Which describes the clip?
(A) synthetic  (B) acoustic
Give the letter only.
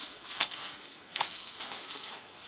A